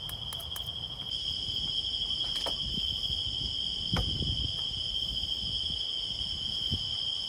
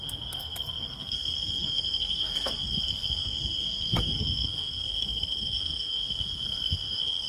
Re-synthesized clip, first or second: second